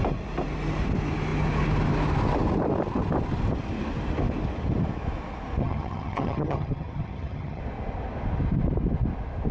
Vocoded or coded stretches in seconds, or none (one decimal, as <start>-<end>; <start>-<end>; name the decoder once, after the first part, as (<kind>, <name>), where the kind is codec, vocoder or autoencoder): 5.6-7.6 (vocoder, HiFi-GAN)